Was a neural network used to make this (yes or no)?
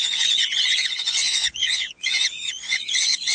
yes